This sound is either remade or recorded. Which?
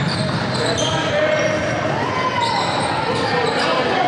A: recorded